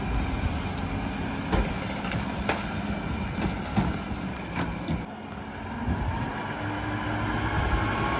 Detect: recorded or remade recorded